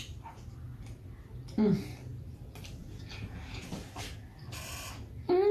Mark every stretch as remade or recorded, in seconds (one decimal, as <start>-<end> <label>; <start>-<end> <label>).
0.0-5.5 recorded